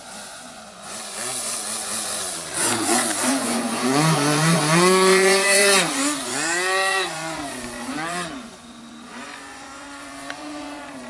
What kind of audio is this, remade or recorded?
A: remade